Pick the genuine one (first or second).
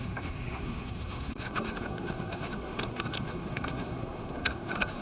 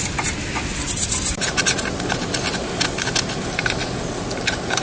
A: second